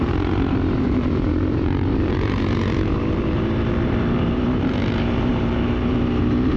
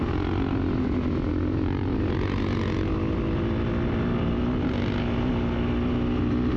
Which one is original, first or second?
second